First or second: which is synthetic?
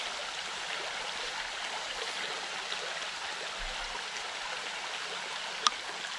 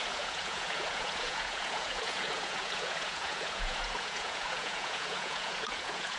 second